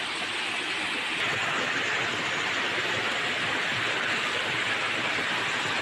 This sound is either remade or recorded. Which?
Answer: recorded